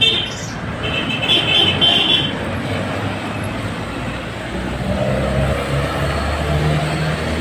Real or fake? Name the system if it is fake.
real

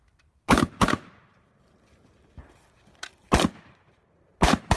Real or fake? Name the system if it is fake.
fake, vocoder, BigVGAN v2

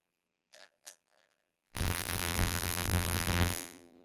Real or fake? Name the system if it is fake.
fake, vocoder, BigVGAN v2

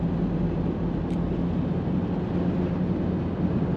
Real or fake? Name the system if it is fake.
real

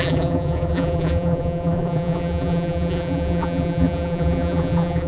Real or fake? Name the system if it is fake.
fake, vocoder, BigVGAN v2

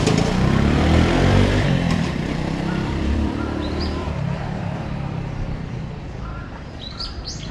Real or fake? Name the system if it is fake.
fake, vocoder, BigVGAN v2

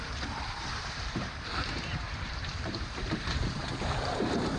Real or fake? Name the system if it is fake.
fake, vocoder, BigVGAN v2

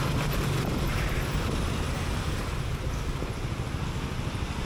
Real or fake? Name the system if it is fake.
real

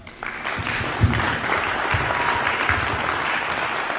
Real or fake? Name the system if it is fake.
real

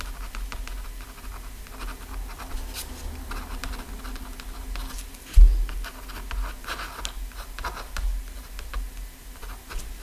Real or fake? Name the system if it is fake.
real